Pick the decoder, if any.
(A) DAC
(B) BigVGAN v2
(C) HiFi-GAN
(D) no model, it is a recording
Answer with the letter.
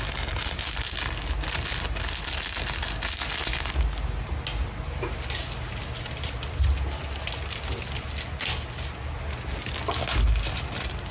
D